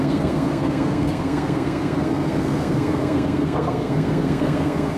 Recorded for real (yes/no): no